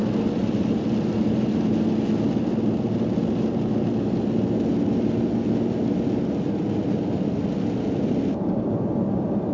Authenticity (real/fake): real